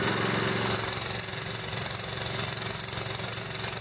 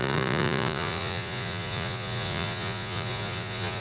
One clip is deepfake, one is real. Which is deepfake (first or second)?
second